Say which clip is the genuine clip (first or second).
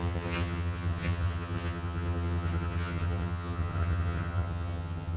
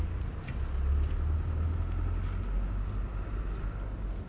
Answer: second